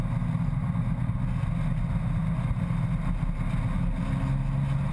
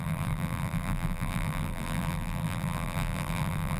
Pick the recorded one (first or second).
first